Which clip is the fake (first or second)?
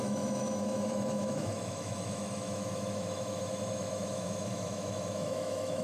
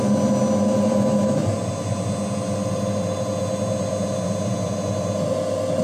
first